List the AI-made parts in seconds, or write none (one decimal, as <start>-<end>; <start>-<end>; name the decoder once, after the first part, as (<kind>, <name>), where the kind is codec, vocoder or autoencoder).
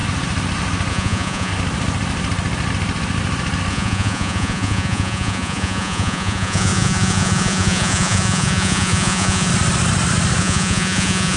0.9-1.5 (vocoder, Vocos); 3.7-9.5; 10.4-11.4